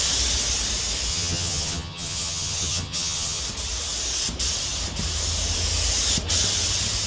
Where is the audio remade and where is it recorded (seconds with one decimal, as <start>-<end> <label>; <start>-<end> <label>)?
0.0-1.1 recorded; 1.1-3.4 remade; 3.4-7.1 recorded